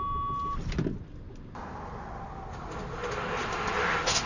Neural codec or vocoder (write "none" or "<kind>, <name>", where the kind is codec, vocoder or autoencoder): none